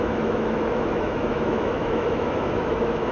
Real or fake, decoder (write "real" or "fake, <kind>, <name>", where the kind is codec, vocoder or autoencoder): fake, autoencoder, DAC-VAE